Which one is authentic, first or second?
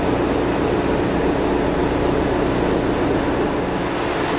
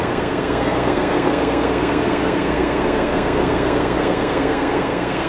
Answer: first